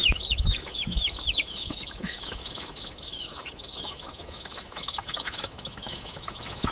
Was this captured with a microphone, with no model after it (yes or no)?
no